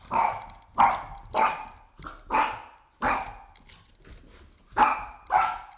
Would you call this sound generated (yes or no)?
no